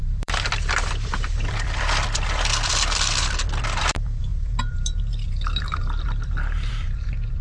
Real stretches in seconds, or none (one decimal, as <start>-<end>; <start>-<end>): none